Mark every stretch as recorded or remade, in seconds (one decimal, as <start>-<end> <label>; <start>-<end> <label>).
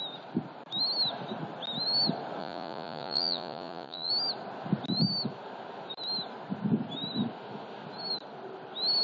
0.0-2.4 recorded; 2.4-4.1 remade; 4.1-9.0 recorded